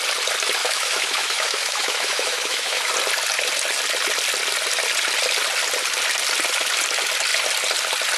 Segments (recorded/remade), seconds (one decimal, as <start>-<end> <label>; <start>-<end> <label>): 0.0-0.6 recorded; 0.6-2.9 remade; 2.9-8.2 recorded